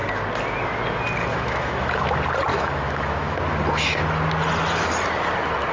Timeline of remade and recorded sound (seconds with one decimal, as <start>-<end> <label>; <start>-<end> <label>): 0.0-1.3 recorded; 1.3-2.1 remade; 2.1-2.5 recorded; 2.5-3.4 remade; 3.4-5.7 recorded